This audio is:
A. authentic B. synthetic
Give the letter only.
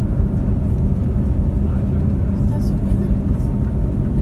A